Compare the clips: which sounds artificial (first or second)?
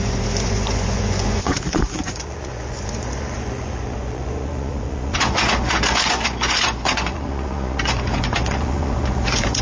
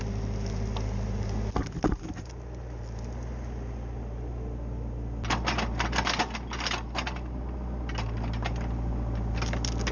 first